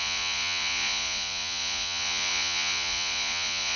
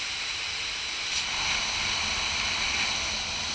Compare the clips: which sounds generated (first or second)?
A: first